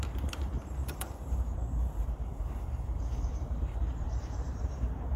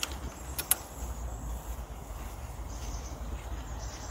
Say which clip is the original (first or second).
second